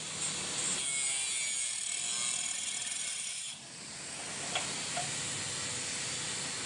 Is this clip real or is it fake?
real